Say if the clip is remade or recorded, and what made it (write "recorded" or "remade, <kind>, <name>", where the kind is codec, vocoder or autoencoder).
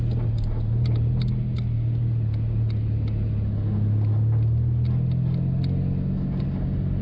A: recorded